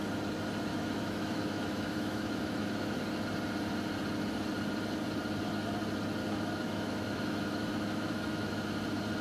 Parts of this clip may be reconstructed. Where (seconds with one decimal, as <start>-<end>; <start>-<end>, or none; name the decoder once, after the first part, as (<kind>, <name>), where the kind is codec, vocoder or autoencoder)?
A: 0.7-3.0 (autoencoder, DAC-VAE); 6.2-8.6